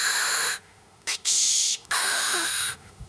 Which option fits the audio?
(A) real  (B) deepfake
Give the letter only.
B